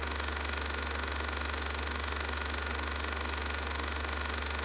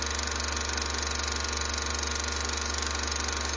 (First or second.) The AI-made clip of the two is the first